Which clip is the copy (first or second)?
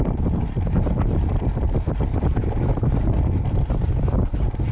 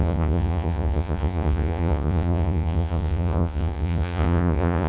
second